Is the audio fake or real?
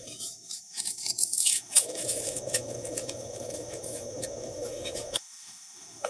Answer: fake